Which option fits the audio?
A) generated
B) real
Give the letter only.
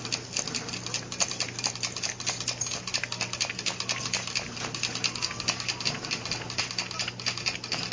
B